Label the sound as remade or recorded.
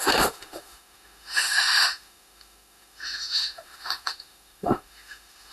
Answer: remade